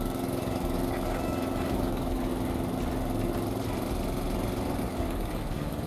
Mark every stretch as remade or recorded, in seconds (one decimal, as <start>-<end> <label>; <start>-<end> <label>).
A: 0.0-2.3 remade; 2.3-4.8 recorded; 4.8-5.9 remade